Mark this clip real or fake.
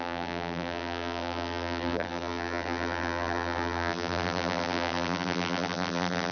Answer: fake